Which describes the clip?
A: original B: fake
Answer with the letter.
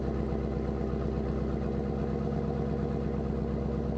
A